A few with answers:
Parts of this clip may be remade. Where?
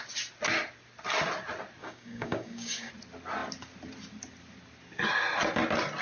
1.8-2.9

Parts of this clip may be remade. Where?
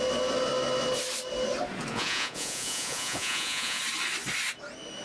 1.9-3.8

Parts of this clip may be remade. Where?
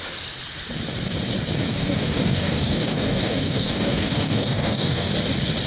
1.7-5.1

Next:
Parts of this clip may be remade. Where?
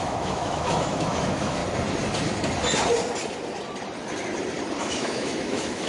0.0-1.6; 4.8-5.9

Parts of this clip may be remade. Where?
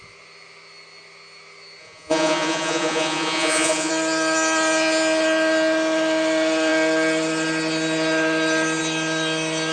1.8-3.9